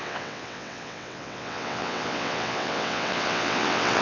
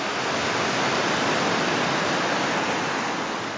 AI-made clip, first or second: first